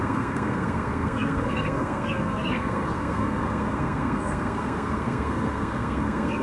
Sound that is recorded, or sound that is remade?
remade